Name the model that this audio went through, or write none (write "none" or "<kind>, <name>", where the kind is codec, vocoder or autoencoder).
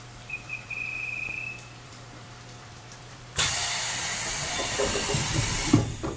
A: vocoder, BigVGAN v2